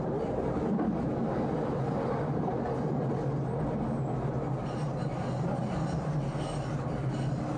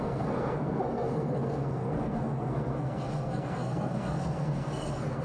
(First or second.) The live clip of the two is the first